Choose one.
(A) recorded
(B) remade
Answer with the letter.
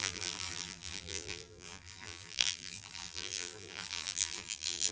B